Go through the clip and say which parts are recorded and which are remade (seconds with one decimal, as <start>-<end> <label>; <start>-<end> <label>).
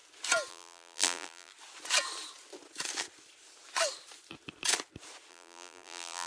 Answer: 0.0-0.5 recorded; 0.5-1.5 remade; 1.5-5.3 recorded; 5.3-6.3 remade